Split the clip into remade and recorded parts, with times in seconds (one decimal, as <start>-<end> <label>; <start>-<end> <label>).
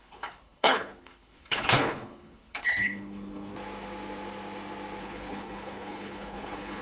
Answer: 0.0-3.5 remade; 3.5-5.0 recorded; 5.0-6.8 remade